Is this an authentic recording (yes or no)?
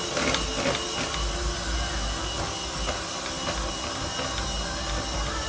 yes